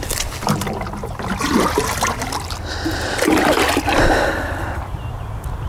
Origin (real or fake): real